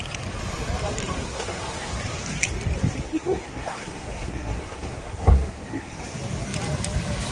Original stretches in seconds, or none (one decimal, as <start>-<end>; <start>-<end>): 0.0-1.2; 1.9-3.0; 6.0-7.3